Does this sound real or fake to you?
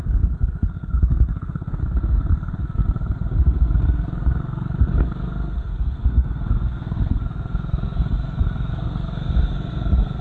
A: fake